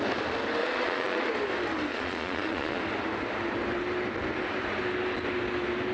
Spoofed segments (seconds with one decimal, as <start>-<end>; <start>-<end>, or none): 0.6-1.3; 1.9-2.8